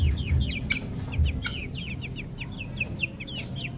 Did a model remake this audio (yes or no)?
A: no